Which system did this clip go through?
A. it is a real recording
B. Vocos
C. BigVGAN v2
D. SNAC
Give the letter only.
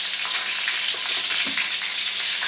A